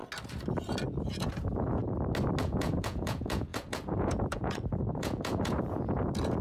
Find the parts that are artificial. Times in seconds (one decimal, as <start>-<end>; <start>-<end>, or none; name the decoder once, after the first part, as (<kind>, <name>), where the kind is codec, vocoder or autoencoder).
1.0-1.8 (vocoder, Vocos); 2.4-6.4